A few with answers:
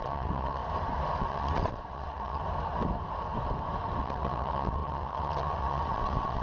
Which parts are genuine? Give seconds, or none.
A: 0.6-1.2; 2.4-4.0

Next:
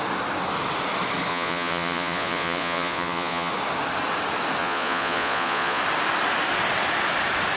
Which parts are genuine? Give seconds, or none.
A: 0.0-1.3; 3.5-4.6; 5.8-7.6

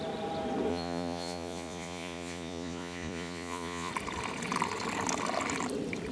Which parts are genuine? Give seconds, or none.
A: 0.0-0.7; 3.9-6.1

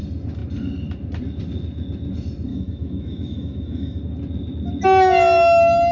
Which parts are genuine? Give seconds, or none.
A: 0.0-2.5; 4.0-5.9